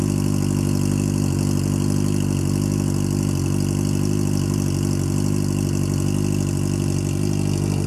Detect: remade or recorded recorded